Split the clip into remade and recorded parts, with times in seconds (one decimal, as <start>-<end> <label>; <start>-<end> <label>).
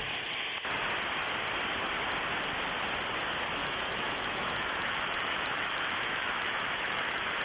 0.0-3.6 recorded; 3.6-7.4 remade